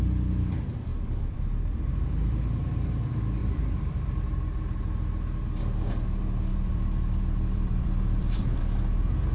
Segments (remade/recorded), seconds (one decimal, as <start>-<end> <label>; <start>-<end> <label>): 0.0-0.9 recorded; 0.9-2.6 remade; 2.6-3.4 recorded; 3.4-4.2 remade; 4.2-6.5 recorded; 6.5-8.6 remade; 8.6-9.3 recorded